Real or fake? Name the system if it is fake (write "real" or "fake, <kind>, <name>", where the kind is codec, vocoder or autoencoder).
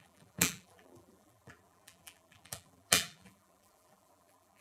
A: fake, vocoder, BigVGAN v2